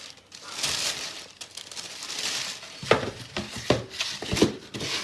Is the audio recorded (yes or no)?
yes